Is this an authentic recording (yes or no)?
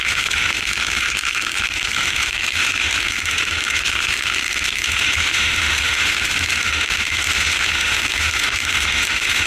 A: no